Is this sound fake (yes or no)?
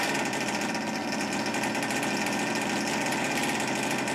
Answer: no